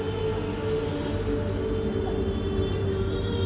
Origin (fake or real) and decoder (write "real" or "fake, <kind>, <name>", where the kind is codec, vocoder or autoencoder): real